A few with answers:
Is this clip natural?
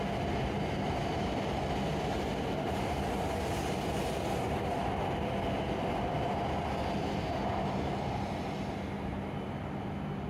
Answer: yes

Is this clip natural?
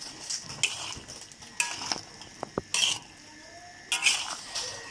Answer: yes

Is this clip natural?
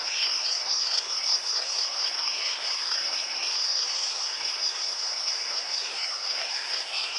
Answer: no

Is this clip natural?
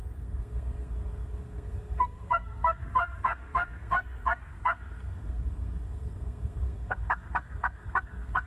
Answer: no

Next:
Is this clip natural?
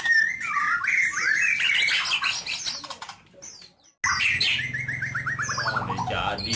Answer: yes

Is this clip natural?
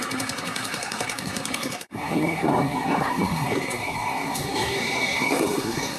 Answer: no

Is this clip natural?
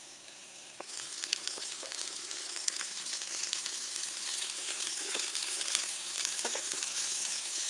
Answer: no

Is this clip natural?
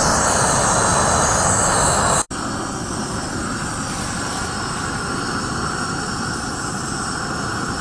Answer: yes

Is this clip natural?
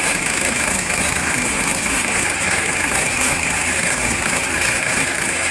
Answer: no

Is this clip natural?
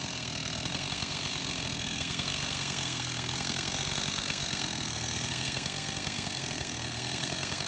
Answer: no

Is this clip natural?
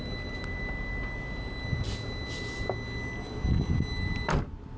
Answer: yes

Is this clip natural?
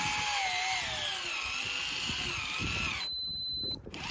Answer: yes